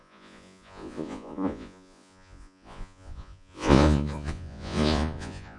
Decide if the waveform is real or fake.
fake